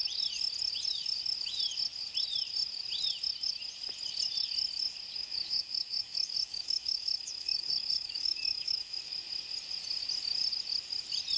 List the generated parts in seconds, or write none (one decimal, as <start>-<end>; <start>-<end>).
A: 5.2-9.0